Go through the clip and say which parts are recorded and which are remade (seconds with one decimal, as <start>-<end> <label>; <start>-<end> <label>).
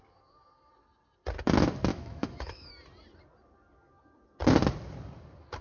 0.0-1.9 recorded; 1.9-2.7 remade; 2.7-5.6 recorded